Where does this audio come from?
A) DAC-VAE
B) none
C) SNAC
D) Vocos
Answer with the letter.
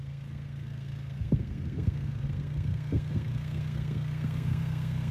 C